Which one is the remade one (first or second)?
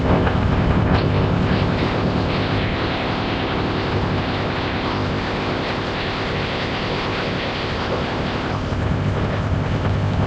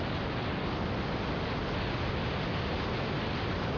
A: first